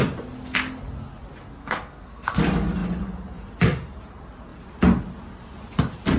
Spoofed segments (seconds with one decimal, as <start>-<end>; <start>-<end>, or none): 1.6-2.4